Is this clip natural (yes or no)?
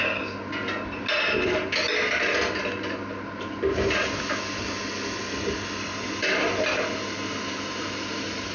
yes